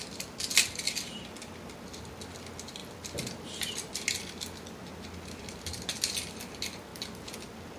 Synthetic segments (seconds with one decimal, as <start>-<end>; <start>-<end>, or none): none